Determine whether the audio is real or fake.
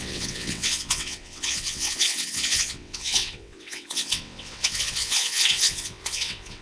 fake